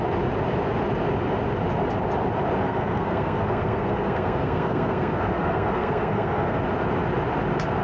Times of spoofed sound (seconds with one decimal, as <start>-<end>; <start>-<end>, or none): 2.6-6.6